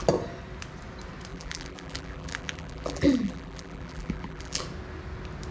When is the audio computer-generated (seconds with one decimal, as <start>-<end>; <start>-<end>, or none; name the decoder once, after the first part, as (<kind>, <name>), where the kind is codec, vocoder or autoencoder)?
1.3-4.6 (vocoder, BigVGAN v2)